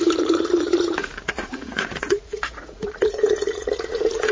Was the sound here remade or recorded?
remade